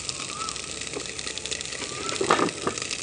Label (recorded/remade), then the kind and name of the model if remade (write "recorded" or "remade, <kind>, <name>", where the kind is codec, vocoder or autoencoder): remade, vocoder, BigVGAN v2